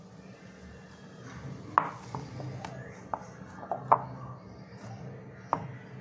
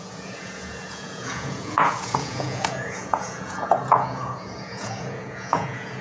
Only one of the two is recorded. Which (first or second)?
first